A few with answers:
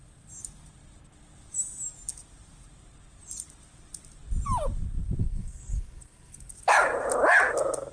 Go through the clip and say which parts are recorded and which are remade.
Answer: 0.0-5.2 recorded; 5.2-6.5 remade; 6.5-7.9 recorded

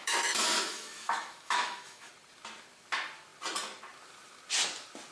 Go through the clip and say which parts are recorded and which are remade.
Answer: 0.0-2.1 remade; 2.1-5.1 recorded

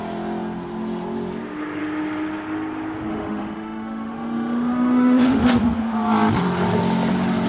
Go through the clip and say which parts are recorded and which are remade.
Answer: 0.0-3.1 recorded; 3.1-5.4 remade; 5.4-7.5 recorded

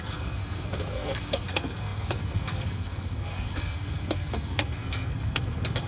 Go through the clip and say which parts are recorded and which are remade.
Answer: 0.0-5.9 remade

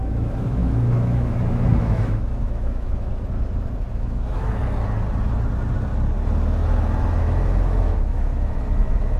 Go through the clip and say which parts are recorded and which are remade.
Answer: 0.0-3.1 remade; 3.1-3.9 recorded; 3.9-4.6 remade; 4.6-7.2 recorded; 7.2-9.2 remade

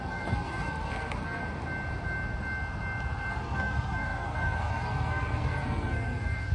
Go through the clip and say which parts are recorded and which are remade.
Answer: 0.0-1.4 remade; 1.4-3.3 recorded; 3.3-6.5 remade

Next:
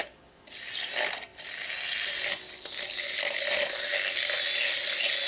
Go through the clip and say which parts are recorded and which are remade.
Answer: 0.0-5.3 recorded

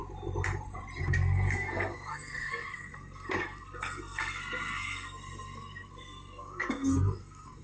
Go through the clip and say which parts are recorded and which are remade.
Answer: 0.0-1.0 recorded; 1.0-7.6 remade